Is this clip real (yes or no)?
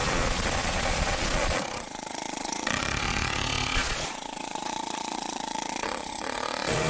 no